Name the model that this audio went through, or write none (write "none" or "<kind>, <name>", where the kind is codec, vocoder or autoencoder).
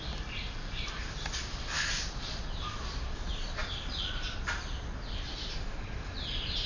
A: none